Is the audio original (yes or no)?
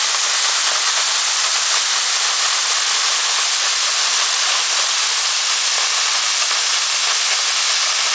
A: yes